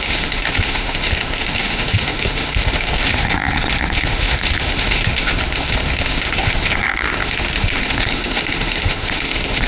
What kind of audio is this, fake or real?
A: fake